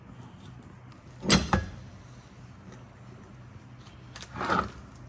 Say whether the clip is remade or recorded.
recorded